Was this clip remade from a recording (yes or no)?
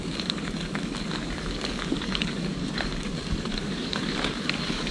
yes